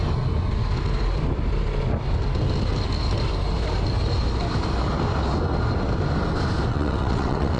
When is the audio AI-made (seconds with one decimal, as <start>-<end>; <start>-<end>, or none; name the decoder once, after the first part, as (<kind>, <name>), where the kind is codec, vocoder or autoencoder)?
6.7-7.6 (vocoder, WaveNeXt)